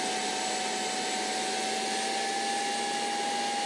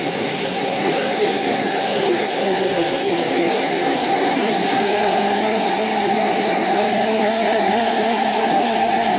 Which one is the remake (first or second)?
second